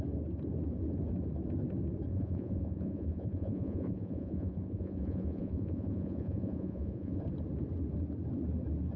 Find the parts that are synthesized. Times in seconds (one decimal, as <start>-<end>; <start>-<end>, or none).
2.1-7.2